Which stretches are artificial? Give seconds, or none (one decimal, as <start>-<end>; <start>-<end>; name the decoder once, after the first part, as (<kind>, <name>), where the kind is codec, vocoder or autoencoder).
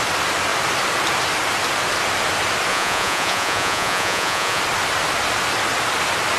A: 2.7-4.6 (vocoder, Vocos)